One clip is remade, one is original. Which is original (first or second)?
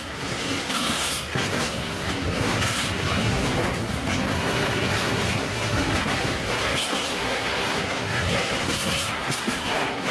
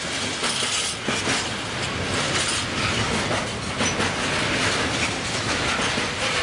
second